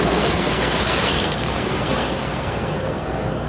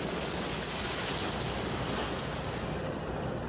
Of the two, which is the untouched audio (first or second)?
second